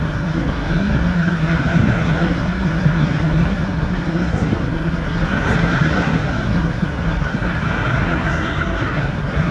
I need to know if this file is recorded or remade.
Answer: remade